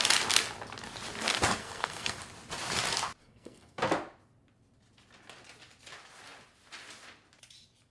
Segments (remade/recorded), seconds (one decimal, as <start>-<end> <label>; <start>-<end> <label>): 0.0-1.6 recorded; 1.6-2.2 remade; 2.2-3.2 recorded; 3.2-3.8 remade; 3.8-7.9 recorded